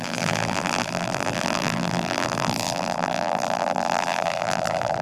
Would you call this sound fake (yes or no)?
yes